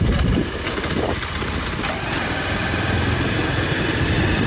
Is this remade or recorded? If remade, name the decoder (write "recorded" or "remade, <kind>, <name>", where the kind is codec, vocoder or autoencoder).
recorded